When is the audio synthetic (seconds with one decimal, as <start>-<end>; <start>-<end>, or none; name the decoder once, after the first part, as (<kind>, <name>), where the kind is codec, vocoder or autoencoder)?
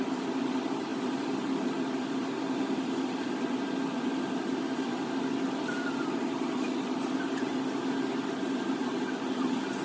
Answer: none